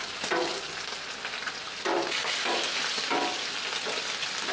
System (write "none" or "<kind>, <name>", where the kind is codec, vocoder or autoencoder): none